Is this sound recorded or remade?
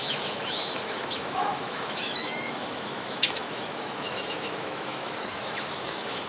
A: remade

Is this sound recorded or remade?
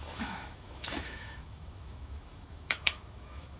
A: remade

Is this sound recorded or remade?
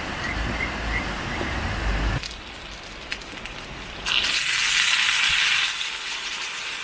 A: recorded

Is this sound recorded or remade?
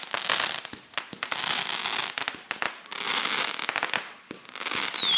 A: recorded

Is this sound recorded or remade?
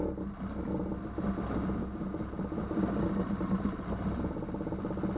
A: recorded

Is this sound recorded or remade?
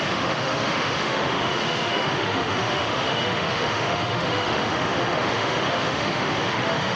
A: remade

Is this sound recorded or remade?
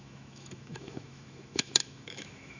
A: remade